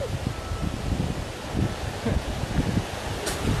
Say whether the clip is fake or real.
real